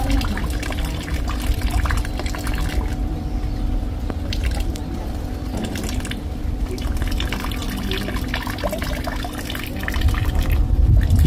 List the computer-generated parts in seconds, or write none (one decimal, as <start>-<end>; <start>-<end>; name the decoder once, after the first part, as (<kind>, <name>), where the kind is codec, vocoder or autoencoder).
none